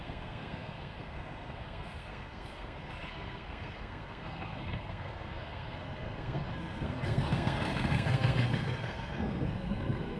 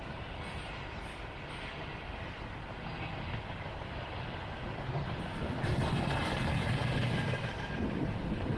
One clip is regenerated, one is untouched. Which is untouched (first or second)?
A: second